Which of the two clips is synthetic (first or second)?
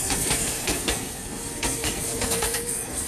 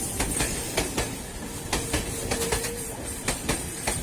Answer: first